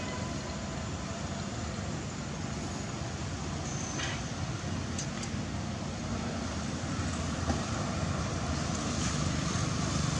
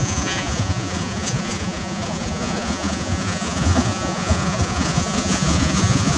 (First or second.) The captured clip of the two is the first